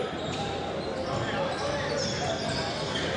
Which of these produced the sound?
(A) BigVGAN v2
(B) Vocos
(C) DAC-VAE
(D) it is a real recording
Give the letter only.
D